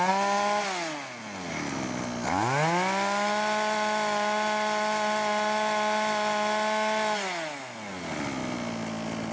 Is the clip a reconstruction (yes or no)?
no